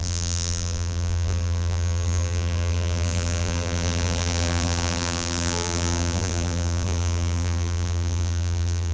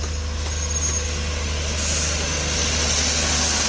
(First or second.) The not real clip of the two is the first